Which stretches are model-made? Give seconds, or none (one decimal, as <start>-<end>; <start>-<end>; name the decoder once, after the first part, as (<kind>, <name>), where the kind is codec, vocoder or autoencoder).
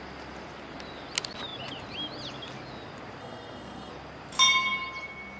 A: 3.2-3.9 (codec, SNAC)